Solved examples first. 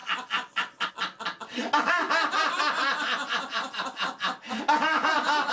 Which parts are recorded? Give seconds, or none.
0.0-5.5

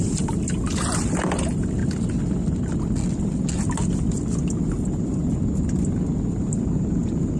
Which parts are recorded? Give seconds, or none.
1.8-4.7; 5.2-6.4

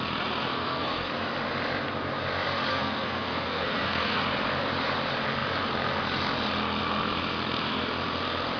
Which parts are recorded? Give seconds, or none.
0.0-0.5; 1.1-2.7; 4.2-8.6

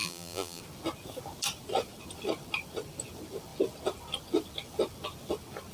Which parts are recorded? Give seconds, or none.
0.6-5.7

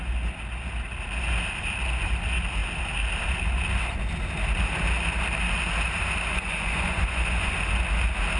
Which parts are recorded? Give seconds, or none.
0.0-6.3; 7.5-8.4